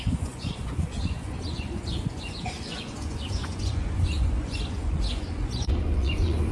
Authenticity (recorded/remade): remade